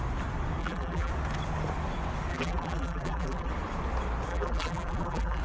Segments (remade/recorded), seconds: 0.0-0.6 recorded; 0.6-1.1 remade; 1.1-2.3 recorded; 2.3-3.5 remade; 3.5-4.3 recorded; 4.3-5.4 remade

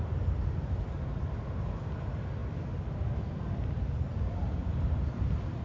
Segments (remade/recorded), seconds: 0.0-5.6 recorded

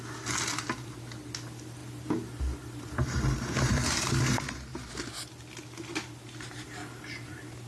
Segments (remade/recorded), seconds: 0.0-1.8 recorded; 1.8-4.2 remade; 4.2-4.7 recorded; 4.7-5.3 remade; 5.3-6.8 recorded; 6.8-7.7 remade

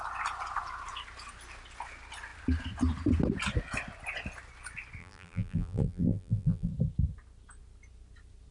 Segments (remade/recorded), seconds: 0.0-5.0 recorded; 5.0-6.7 remade; 6.7-8.5 recorded

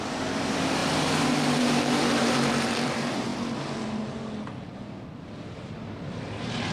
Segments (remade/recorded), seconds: 0.0-3.3 remade; 3.3-6.1 recorded; 6.1-6.7 remade

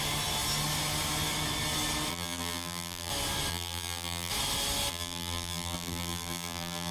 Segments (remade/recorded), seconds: 0.0-2.1 recorded; 2.1-3.1 remade; 3.1-3.5 recorded; 3.5-4.3 remade; 4.3-4.9 recorded; 4.9-6.9 remade